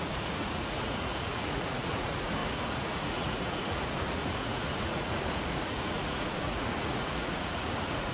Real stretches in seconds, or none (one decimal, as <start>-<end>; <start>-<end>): none